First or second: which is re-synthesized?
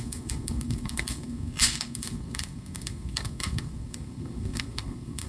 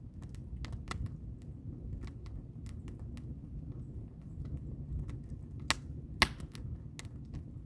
first